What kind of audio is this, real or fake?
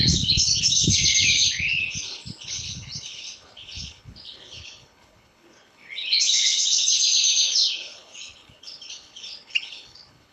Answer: fake